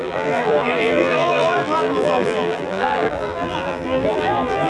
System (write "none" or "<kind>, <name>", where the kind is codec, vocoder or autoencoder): vocoder, BigVGAN v2